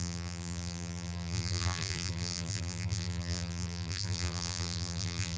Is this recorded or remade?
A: remade